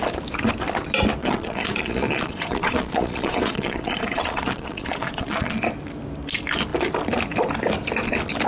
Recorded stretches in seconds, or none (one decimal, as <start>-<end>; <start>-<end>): 0.0-1.2; 5.6-8.5